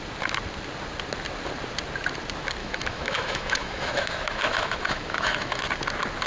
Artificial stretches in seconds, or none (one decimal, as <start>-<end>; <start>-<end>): 2.6-5.6